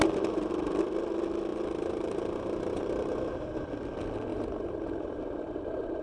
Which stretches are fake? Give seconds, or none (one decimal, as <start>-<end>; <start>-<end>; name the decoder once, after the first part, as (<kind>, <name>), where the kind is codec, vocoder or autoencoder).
1.5-3.7 (vocoder, BigVGAN v2); 4.3-5.2